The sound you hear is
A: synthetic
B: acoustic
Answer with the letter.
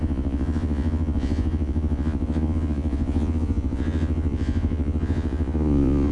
A